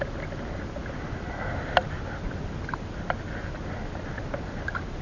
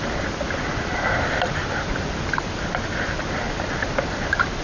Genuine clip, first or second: first